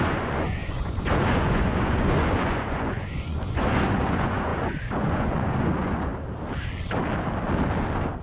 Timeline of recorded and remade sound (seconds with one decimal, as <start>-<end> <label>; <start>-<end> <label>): 0.0-6.1 remade; 6.1-8.2 recorded